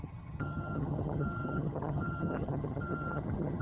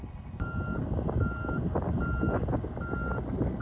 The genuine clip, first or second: second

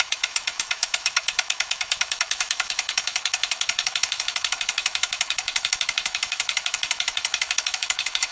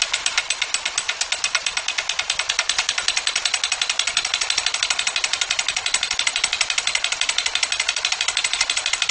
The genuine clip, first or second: second